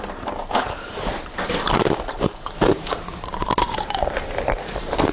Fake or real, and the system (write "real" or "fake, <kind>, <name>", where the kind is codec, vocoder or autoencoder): fake, vocoder, BigVGAN v2